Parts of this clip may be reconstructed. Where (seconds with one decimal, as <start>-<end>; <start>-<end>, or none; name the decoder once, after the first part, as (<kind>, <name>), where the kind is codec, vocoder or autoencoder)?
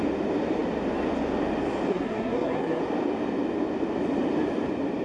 1.9-2.8 (codec, SNAC)